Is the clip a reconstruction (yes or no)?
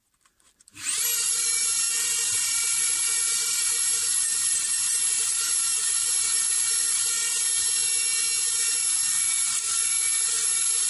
yes